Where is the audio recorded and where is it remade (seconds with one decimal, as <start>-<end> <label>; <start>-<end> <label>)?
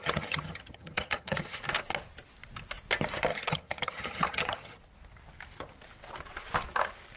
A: 0.0-1.6 remade; 1.6-3.3 recorded; 3.3-4.8 remade; 4.8-7.2 recorded